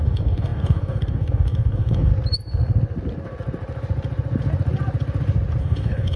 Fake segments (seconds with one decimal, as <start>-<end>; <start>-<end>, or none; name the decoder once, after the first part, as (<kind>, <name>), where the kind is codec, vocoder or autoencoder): 0.0-2.1 (codec, DAC); 5.6-6.2